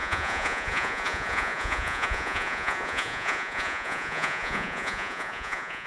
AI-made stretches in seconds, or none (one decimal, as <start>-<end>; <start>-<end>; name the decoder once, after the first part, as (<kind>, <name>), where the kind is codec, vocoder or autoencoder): 0.0-5.9 (vocoder, Vocos)